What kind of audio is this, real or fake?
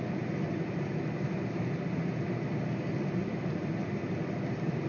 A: real